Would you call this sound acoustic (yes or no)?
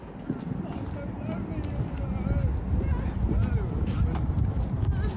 yes